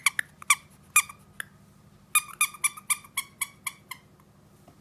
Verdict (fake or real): real